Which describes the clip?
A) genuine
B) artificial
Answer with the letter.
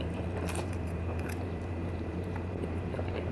B